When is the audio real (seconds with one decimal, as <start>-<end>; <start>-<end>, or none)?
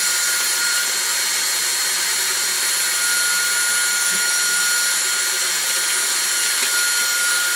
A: 0.0-3.9; 4.6-7.6